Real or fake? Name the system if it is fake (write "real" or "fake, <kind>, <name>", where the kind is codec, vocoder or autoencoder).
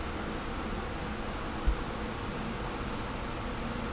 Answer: real